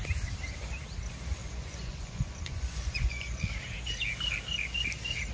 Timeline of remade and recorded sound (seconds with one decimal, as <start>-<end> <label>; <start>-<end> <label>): 0.0-1.4 recorded; 1.4-3.4 remade; 3.4-5.3 recorded